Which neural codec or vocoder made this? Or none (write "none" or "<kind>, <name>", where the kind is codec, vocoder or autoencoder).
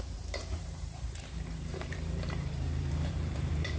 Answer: vocoder, BigVGAN v2